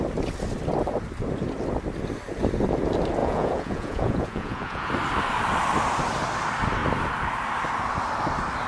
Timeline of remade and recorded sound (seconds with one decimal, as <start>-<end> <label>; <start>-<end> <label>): 0.0-3.2 recorded; 3.2-4.9 remade; 4.9-8.7 recorded